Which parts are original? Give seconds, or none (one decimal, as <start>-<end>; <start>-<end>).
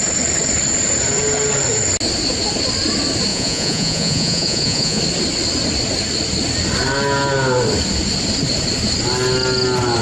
0.0-3.3; 5.0-10.0